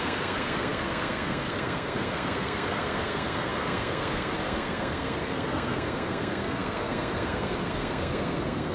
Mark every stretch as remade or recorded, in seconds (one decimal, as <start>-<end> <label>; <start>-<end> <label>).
0.0-8.7 remade